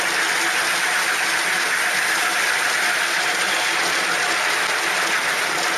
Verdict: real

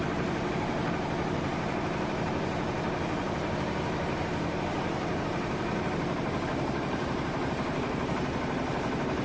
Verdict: fake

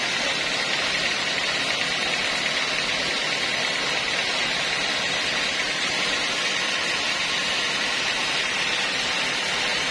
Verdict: real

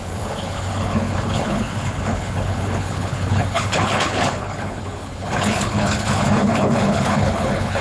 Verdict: fake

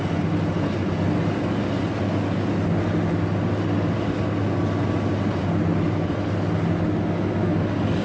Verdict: real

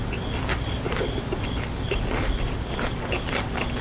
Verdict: real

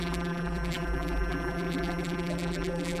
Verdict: fake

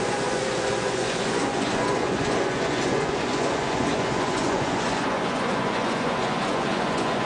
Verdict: fake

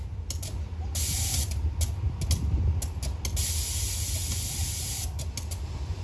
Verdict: real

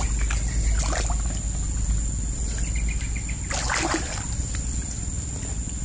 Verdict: real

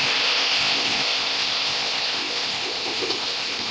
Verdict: fake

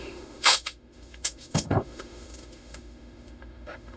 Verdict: fake